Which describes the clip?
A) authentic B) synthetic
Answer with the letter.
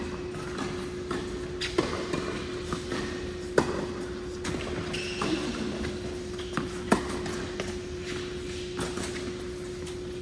A